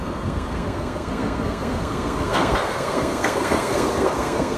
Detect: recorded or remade remade